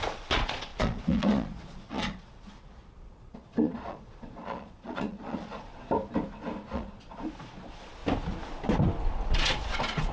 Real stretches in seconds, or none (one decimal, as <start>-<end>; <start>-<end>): 5.8-6.7; 8.0-9.1